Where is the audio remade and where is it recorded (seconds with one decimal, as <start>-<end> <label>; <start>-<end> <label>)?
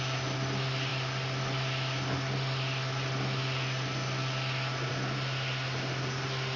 0.0-6.6 recorded